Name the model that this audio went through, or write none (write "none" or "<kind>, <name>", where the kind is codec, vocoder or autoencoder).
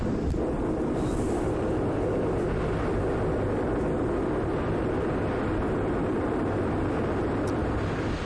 none